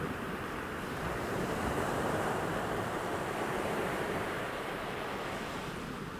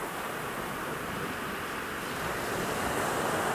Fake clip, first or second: first